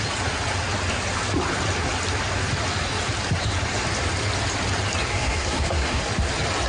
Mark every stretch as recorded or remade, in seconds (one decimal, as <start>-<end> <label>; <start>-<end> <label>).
0.0-5.1 recorded; 5.1-6.0 remade; 6.0-6.7 recorded